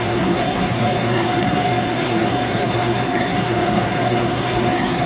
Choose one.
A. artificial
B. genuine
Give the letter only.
A